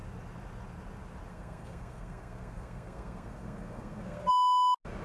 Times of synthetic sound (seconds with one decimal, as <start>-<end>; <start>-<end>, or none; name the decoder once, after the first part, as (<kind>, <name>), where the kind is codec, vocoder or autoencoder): 1.3-4.3 (codec, SNAC)